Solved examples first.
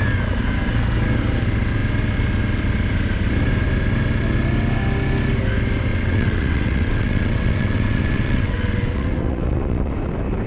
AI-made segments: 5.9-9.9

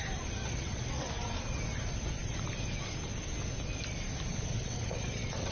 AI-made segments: 0.4-1.1; 4.3-5.5

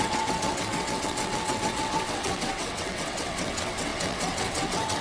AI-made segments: 0.0-5.0

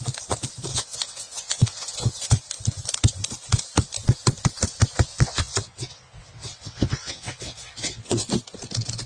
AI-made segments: 0.7-2.4; 5.1-8.3

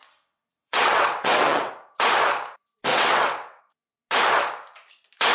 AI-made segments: 0.0-1.7; 2.9-3.6